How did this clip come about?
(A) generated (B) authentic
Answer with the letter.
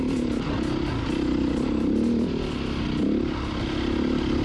B